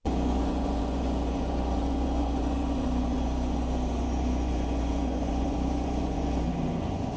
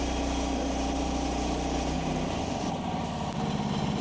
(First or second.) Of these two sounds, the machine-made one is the first